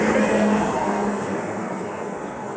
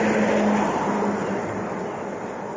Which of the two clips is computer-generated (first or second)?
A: first